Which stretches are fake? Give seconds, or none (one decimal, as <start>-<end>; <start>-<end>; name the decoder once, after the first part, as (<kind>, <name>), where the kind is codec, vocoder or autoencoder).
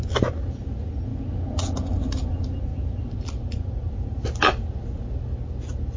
2.7-3.9 (vocoder, BigVGAN v2)